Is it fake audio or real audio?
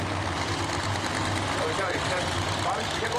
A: real